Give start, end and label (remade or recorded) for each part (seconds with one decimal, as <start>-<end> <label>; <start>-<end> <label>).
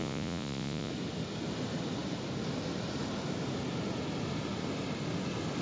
0.0-0.9 remade; 0.9-5.6 recorded